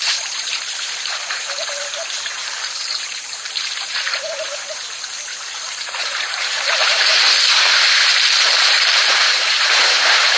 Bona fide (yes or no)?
no